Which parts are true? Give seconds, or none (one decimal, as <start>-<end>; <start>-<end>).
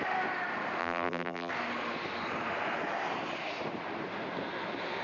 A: 0.0-0.8; 1.5-5.0